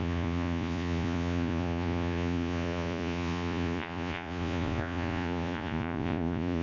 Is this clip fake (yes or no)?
yes